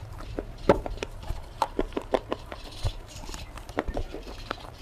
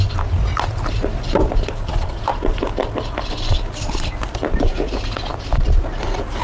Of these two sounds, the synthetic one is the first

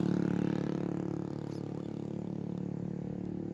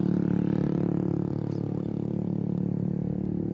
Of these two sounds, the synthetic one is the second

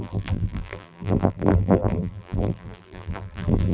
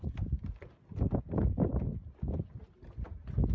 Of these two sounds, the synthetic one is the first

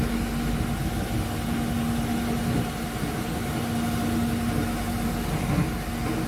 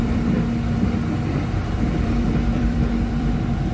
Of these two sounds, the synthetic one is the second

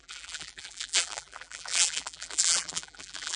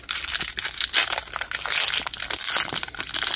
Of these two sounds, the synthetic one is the first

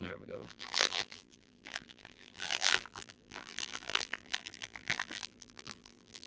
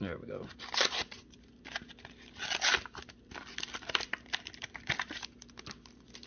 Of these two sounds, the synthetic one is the first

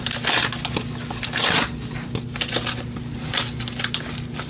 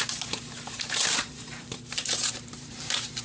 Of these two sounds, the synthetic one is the second